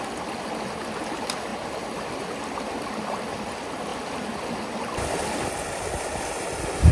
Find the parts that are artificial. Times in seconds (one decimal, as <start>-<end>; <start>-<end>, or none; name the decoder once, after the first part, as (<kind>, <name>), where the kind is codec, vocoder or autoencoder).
none